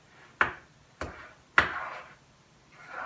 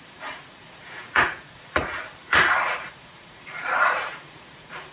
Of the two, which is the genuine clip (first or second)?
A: first